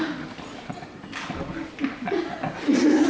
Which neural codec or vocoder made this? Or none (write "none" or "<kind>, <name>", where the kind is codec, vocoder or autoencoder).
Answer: none